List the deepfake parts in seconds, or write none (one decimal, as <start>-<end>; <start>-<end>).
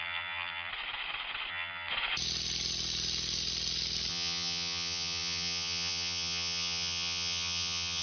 0.0-0.7; 1.5-1.9; 4.1-8.0